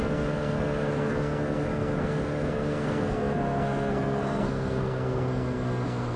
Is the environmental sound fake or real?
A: fake